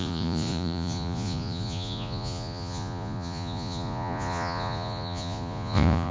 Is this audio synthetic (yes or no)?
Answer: yes